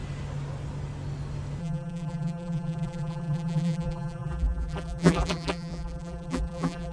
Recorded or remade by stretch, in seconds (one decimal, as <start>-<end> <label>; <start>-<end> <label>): 0.0-1.6 recorded; 1.6-6.9 remade